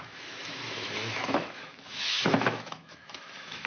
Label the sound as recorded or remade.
remade